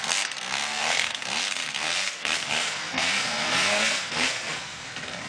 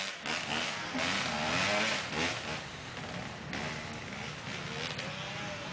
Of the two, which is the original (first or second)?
second